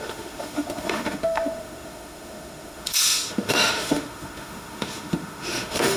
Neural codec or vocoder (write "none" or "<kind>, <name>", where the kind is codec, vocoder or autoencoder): autoencoder, DAC-VAE